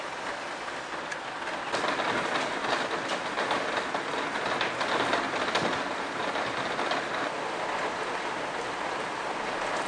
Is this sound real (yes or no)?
yes